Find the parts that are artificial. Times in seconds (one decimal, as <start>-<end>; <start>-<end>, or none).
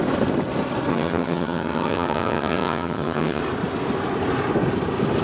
0.9-3.4